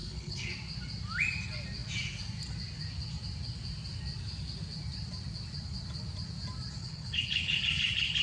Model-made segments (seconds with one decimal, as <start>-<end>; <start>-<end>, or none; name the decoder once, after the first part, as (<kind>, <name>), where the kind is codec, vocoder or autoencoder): 0.0-0.5 (codec, HILCodec); 6.8-7.6